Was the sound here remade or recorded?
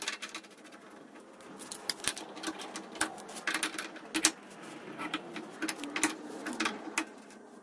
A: recorded